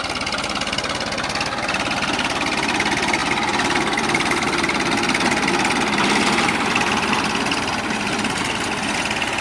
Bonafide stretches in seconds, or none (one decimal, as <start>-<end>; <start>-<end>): 0.0-9.4